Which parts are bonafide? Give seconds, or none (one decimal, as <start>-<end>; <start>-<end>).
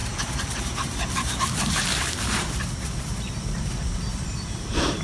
3.0-4.1